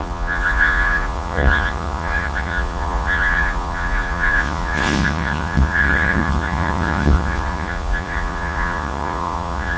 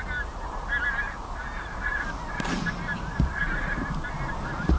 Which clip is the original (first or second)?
second